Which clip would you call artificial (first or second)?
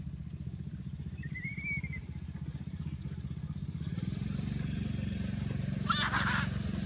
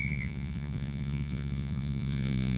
second